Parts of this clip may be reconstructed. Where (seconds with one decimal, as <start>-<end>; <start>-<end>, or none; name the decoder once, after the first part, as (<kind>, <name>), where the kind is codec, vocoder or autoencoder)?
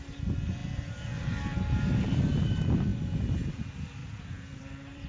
4.0-5.1 (vocoder, BigVGAN v2)